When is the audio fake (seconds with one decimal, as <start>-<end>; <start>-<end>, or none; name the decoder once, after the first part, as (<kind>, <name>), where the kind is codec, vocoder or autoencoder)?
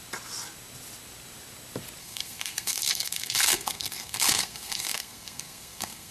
2.0-6.1 (codec, SNAC)